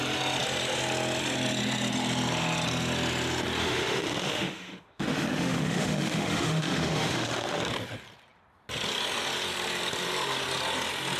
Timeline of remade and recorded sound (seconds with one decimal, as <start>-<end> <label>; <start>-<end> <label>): 0.0-3.6 recorded; 3.6-7.6 remade; 7.6-11.2 recorded